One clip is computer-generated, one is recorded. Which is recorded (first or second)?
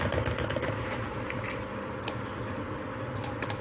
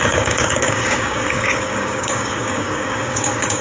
first